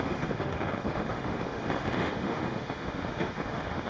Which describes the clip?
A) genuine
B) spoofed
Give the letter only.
B